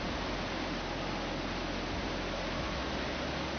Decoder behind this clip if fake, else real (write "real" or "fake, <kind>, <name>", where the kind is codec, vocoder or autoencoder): real